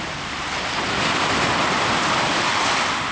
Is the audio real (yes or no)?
yes